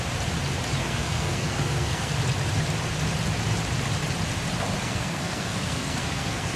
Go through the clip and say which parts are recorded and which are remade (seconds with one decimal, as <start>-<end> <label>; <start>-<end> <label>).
0.0-0.8 recorded; 0.8-2.2 remade; 2.2-4.8 recorded; 4.8-6.6 remade